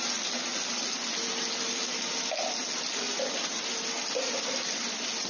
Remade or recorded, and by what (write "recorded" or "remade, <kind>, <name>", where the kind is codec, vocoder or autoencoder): recorded